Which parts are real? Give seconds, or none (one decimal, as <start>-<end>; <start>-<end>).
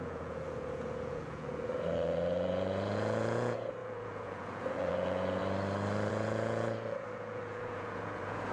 5.4-6.1